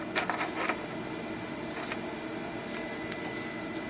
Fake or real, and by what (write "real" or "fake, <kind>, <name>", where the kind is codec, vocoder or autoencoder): real